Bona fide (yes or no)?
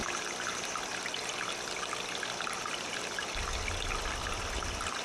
yes